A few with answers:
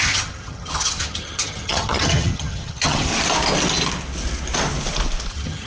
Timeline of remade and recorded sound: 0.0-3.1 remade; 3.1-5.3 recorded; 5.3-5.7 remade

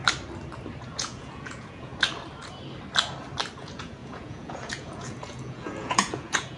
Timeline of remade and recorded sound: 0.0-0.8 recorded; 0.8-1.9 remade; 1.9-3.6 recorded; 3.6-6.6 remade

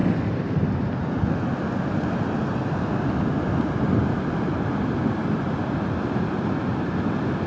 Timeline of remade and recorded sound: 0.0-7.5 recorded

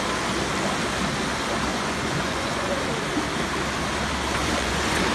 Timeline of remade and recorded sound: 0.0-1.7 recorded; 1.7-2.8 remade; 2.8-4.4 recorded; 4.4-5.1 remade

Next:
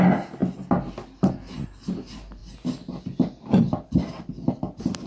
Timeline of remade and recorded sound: 0.0-5.1 recorded

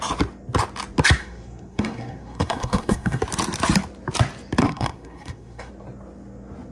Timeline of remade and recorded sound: 0.0-1.2 recorded; 1.2-3.2 remade; 3.2-4.6 recorded; 4.6-5.7 remade; 5.7-6.7 recorded